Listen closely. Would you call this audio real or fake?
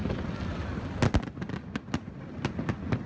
real